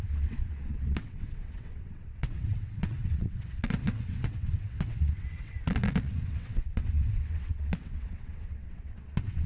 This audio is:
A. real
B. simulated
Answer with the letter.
B